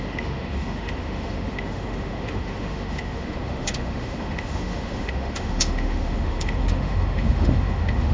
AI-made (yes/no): yes